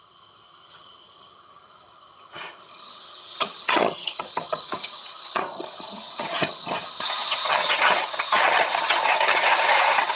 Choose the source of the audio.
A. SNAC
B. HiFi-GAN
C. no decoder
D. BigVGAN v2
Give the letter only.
B